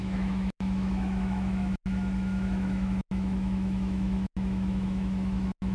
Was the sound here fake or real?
fake